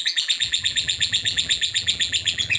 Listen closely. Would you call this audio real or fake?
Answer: fake